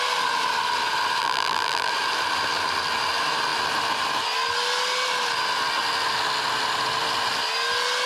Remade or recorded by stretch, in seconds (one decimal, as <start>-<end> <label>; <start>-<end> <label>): 0.0-1.2 recorded; 1.2-1.9 remade; 1.9-8.1 recorded